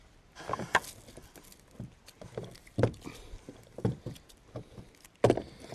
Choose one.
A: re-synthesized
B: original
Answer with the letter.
B